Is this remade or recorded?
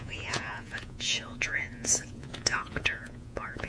remade